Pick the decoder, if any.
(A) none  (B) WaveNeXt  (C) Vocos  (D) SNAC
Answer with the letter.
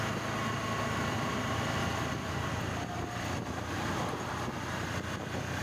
A